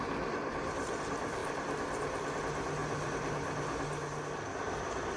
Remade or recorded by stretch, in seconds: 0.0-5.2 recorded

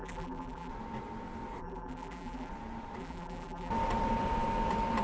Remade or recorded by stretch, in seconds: 0.0-0.7 remade; 0.7-1.6 recorded; 1.6-2.5 remade; 2.5-3.0 recorded; 3.0-3.7 remade; 3.7-5.0 recorded

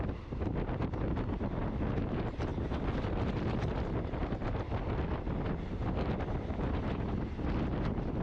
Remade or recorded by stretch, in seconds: 0.0-8.2 recorded